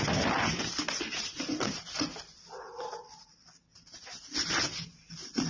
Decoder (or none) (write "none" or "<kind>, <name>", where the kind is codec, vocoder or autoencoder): none